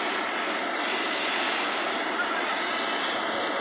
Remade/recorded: recorded